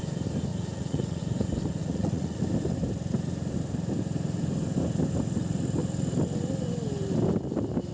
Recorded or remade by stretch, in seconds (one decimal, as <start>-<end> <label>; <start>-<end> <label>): 0.0-0.5 recorded; 0.5-1.2 remade; 1.2-1.8 recorded; 1.8-2.4 remade; 2.4-7.9 recorded